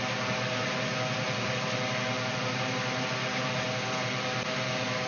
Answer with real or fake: real